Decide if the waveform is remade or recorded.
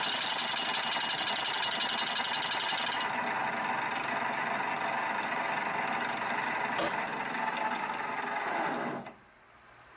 recorded